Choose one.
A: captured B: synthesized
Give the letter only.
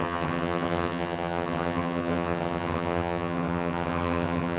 B